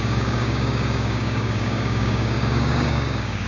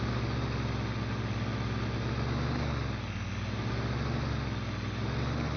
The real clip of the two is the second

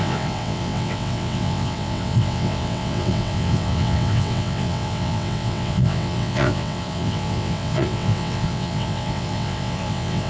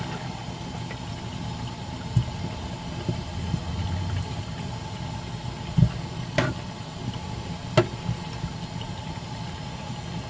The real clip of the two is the second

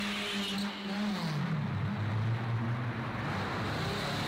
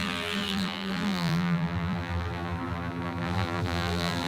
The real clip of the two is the first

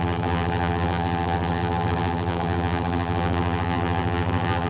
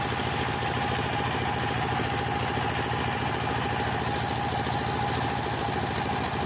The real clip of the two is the second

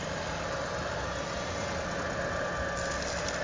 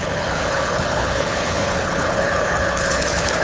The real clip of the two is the first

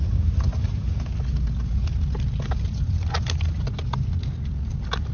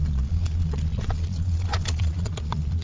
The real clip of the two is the first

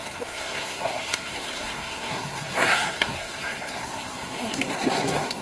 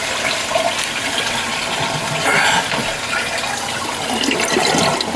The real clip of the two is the second